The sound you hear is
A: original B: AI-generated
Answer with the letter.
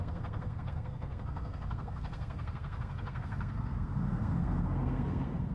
B